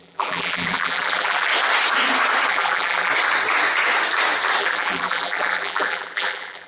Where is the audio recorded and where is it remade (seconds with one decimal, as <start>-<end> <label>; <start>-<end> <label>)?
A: 0.0-1.5 remade; 1.5-2.5 recorded; 2.5-3.1 remade; 3.1-4.6 recorded; 4.6-6.7 remade